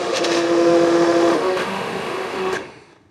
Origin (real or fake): fake